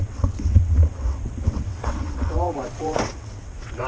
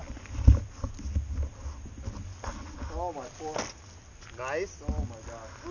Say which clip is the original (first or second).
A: second